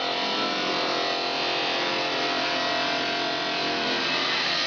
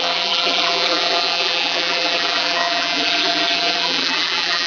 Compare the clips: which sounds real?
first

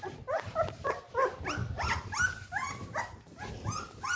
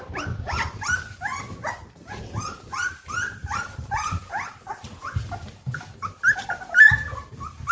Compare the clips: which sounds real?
first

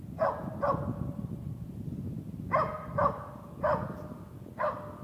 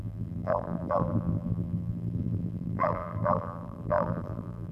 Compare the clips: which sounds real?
first